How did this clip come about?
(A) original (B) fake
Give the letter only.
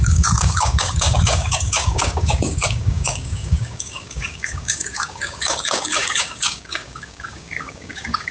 B